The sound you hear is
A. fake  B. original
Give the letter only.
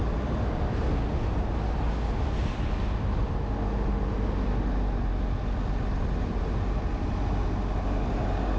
B